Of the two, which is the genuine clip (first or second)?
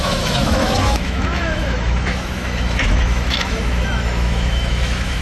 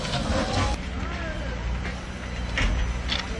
second